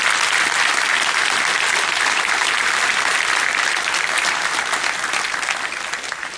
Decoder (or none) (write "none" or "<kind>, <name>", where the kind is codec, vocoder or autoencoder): none